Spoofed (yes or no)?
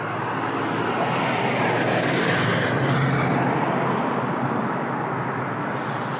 no